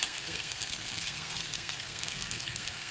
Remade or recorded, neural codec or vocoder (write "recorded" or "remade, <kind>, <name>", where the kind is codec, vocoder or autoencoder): remade, codec, SNAC